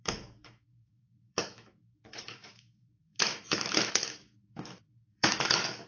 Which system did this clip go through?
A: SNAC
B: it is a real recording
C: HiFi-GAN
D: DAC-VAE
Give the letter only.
D